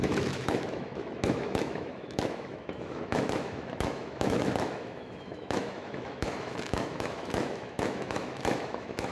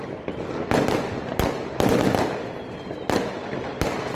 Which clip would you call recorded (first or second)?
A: second